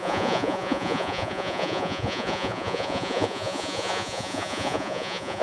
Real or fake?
fake